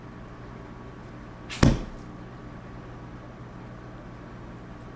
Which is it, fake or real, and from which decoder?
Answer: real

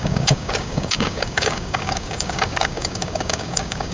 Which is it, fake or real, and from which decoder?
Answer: fake, codec, DAC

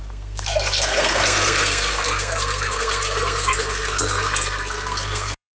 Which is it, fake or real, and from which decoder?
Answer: fake, codec, SNAC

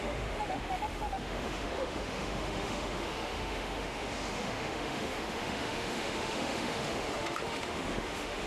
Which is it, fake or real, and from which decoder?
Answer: fake, autoencoder, DAC-VAE